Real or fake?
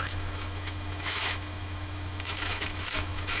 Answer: fake